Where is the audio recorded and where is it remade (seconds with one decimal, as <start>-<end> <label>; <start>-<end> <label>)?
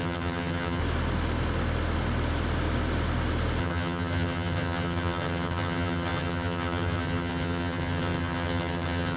0.0-0.8 remade; 0.8-3.6 recorded; 3.6-9.2 remade